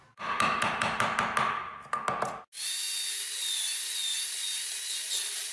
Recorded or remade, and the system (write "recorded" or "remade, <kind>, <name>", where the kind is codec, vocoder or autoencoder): recorded